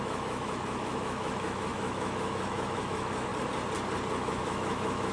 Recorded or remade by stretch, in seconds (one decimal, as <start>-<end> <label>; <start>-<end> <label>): 0.0-3.3 remade; 3.3-4.2 recorded; 4.2-5.1 remade